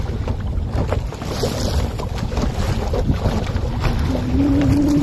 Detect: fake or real real